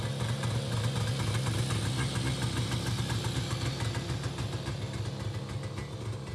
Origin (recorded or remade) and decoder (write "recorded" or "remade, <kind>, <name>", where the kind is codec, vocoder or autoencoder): recorded